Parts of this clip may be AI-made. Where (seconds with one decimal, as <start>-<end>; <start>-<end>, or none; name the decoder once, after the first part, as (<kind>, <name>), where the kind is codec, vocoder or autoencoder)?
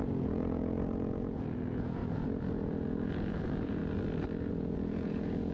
0.0-3.8 (vocoder, Vocos); 4.5-5.5